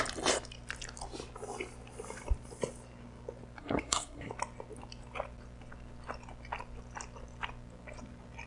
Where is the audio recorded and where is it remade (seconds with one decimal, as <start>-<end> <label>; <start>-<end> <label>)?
0.0-3.6 recorded; 3.6-4.3 remade; 4.3-8.5 recorded